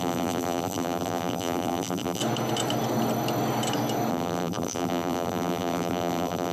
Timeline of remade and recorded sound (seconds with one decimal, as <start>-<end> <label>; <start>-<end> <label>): 0.0-2.2 remade; 2.2-4.1 recorded; 4.1-6.5 remade